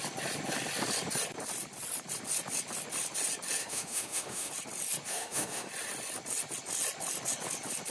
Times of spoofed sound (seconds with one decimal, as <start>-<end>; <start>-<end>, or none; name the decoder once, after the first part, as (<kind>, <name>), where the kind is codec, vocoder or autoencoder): 3.6-4.5 (autoencoder, DAC-VAE); 5.1-5.7